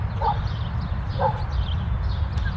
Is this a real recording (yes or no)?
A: yes